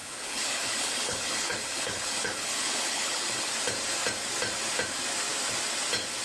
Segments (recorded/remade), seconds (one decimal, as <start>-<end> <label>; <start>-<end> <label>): 0.0-3.5 remade; 3.5-6.2 recorded